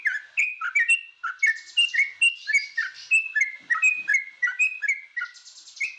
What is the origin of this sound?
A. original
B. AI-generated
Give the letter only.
A